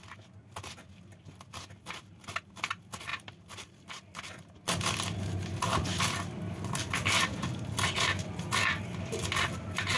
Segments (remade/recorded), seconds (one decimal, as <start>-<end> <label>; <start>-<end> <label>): 0.0-10.0 recorded